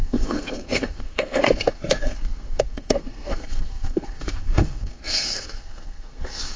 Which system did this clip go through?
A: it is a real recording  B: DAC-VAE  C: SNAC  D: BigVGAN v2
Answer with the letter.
C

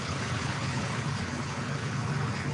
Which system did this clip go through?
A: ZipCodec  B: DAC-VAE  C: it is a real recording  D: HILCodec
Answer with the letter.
D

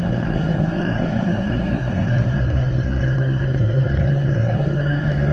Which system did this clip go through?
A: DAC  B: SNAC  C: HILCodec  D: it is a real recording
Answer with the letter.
B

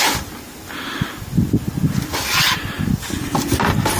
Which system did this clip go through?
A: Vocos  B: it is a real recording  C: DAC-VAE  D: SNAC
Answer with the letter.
B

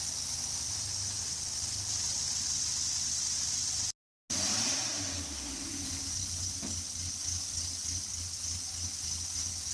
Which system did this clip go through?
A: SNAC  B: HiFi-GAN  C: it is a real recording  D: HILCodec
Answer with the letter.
C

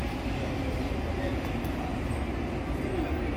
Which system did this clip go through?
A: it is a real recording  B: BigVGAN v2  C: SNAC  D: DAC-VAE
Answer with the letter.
A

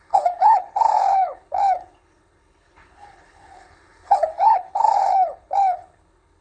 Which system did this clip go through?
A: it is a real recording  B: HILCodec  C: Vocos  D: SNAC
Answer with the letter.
B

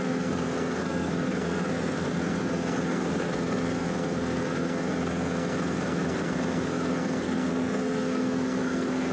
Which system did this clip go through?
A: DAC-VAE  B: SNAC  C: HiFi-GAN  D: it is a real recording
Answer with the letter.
B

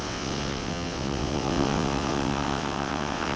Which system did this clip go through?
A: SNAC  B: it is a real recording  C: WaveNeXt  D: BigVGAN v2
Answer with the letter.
C